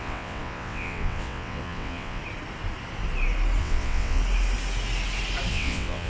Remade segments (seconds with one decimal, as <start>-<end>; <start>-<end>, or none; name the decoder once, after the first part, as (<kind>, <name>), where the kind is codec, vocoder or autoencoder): 0.0-2.2 (vocoder, WaveNeXt); 3.6-4.2; 5.5-6.1